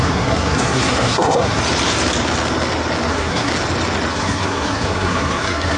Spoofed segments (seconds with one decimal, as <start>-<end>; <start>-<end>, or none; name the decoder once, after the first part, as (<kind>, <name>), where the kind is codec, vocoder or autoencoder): 0.0-1.6 (codec, SNAC); 3.1-3.5; 4.1-5.8